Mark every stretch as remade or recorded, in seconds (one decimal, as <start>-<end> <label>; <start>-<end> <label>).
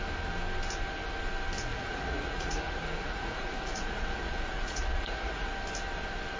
0.0-1.7 recorded; 1.7-5.5 remade; 5.5-6.4 recorded